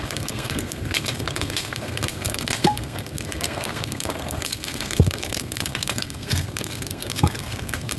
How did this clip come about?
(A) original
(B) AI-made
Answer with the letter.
B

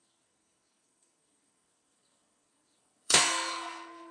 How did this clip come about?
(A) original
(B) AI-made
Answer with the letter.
B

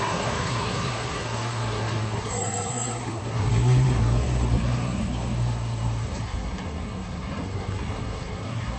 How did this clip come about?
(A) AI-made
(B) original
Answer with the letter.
A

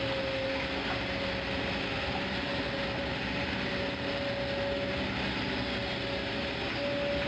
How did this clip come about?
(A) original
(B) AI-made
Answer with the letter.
A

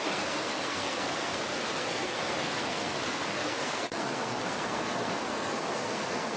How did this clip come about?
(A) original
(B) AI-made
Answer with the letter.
B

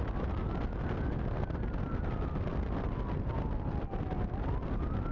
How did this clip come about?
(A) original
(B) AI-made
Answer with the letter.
A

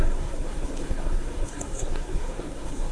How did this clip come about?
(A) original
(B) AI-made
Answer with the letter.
B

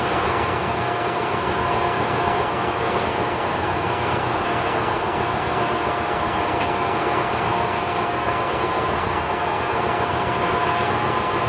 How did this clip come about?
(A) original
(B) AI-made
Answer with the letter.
B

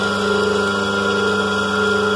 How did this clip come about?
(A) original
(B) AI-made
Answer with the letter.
A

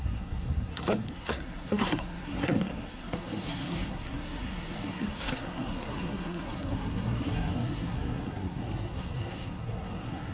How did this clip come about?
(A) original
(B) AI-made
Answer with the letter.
B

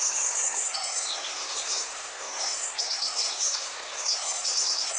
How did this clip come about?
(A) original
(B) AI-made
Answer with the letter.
B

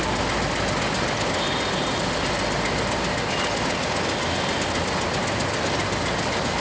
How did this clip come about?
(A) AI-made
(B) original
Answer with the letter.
B